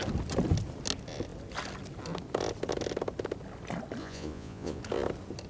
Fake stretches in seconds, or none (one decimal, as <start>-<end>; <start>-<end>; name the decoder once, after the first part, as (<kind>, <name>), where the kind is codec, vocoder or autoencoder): 4.0-4.8 (vocoder, Vocos)